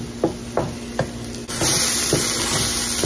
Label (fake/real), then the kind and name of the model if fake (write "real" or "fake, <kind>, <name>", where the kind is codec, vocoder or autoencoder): real